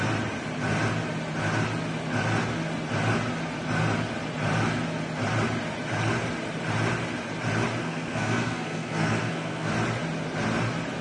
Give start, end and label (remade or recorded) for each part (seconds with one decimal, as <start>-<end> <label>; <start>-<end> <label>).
0.0-7.8 recorded; 7.8-9.7 remade; 9.7-11.0 recorded